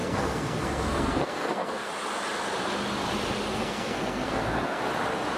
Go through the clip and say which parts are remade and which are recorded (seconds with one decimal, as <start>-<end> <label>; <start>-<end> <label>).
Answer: 0.0-1.9 remade; 1.9-3.5 recorded; 3.5-4.8 remade; 4.8-5.4 recorded